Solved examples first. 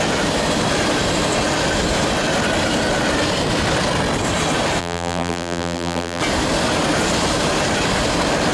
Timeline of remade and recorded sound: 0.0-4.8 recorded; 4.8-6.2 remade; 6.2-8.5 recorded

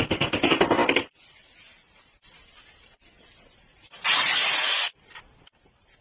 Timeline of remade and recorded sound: 0.0-6.0 recorded

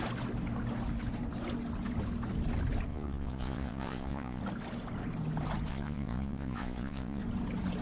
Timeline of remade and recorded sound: 0.0-2.9 recorded; 2.9-4.4 remade; 4.4-5.7 recorded; 5.7-7.2 remade; 7.2-7.8 recorded